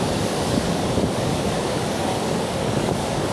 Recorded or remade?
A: remade